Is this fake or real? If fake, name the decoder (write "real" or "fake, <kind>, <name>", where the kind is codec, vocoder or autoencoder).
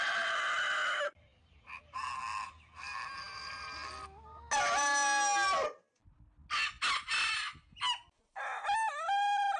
real